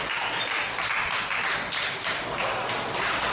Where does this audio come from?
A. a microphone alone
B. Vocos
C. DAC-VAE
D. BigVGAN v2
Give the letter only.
A